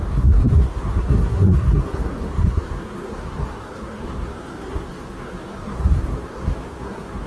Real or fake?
fake